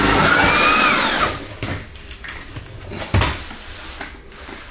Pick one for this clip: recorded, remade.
recorded